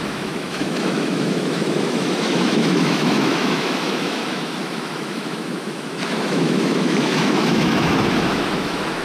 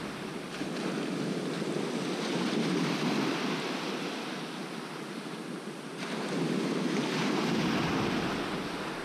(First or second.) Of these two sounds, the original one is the second